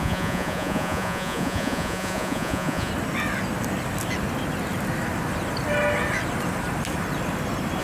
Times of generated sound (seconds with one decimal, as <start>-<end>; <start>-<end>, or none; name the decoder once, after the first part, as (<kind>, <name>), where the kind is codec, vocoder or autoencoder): 0.0-2.9 (vocoder, Vocos)